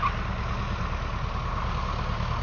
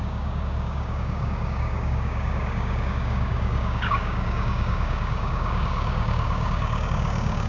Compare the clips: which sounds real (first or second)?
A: first